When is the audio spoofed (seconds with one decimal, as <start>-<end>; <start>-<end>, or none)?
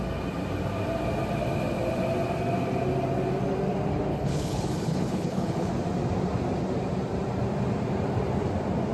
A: 4.1-5.7